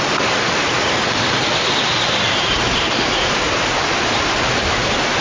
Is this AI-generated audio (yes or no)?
no